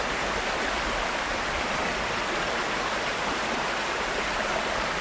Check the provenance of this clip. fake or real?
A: real